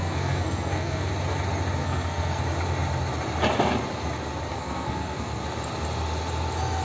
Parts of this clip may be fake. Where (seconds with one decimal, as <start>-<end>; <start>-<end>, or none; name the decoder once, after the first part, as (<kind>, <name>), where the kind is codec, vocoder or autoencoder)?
0.0-1.1 (codec, SNAC); 1.8-2.4; 4.5-5.4